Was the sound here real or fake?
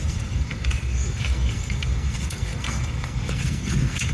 fake